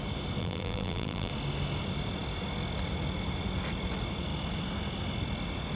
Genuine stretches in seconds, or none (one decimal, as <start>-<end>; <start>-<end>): 0.0-0.4; 1.3-5.8